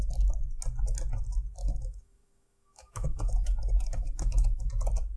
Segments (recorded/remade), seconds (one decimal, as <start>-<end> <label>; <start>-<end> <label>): 0.0-1.6 recorded; 1.6-4.7 remade; 4.7-5.2 recorded